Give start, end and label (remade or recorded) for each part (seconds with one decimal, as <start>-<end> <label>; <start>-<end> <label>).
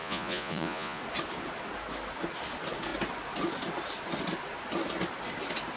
0.0-1.0 remade; 1.0-5.8 recorded